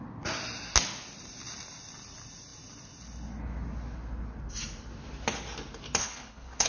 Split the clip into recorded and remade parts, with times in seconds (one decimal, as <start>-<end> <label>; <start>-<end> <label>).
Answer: 0.0-6.0 recorded; 6.0-6.7 remade